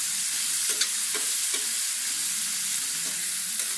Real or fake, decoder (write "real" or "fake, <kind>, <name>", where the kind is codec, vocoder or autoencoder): real